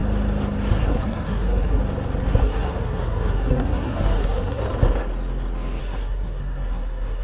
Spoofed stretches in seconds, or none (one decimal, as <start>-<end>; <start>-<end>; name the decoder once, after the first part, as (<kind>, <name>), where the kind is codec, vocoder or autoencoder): 0.7-1.8 (codec, SNAC); 2.4-4.6; 5.8-7.2